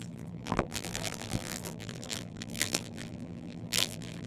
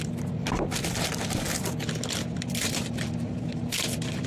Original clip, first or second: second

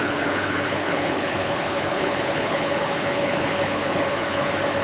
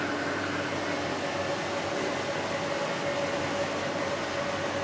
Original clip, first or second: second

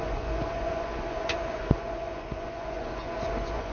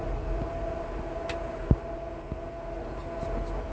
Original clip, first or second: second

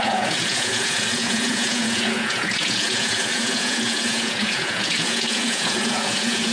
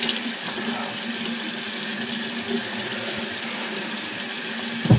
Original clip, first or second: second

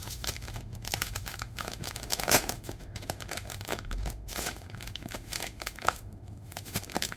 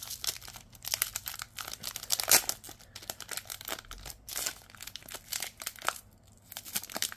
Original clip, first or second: second